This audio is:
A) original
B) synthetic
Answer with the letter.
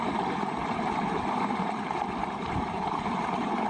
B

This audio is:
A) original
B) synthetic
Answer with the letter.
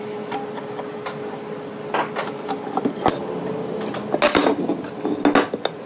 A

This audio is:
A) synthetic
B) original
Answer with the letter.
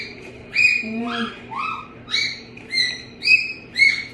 A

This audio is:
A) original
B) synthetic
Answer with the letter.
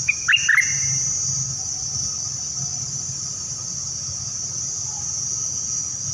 A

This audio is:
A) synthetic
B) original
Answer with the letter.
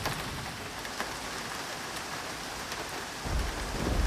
B